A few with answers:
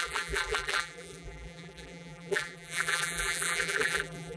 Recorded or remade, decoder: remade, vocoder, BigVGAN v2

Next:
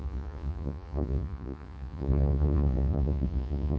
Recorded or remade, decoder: remade, vocoder, Vocos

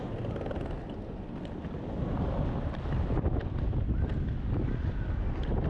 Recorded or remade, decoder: recorded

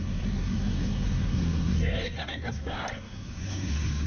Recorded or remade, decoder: remade, codec, SNAC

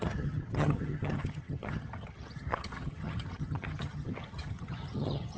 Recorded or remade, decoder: remade, vocoder, HiFi-GAN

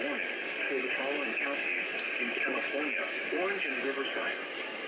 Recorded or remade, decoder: remade, codec, DAC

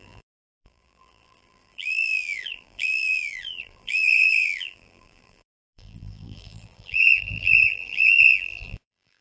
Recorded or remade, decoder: remade, vocoder, BigVGAN v2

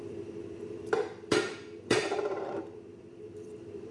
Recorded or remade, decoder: remade, vocoder, BigVGAN v2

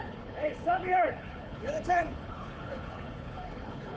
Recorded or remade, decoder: remade, codec, HILCodec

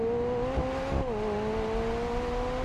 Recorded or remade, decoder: recorded